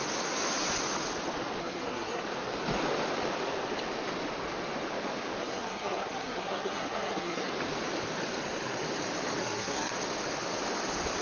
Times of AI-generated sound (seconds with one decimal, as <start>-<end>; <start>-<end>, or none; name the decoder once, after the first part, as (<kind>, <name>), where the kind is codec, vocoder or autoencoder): 1.6-2.2 (codec, SNAC); 5.4-7.5; 9.4-9.9